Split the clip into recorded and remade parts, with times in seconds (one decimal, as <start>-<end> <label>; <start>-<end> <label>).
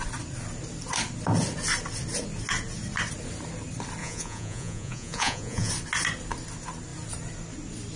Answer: 0.0-4.0 recorded; 4.0-5.7 remade; 5.7-8.0 recorded